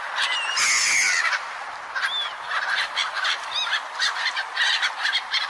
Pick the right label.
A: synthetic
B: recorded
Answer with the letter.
B